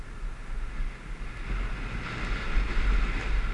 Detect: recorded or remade recorded